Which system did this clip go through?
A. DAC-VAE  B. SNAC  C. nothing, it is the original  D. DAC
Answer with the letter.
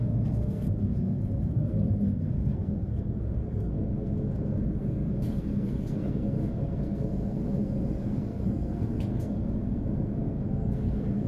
B